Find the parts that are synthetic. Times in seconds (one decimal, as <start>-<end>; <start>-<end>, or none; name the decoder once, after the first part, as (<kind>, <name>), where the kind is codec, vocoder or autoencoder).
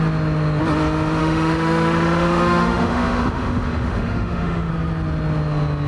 1.2-4.7 (autoencoder, DAC-VAE)